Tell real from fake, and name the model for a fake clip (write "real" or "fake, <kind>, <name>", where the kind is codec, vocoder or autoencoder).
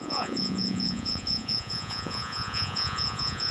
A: fake, vocoder, Vocos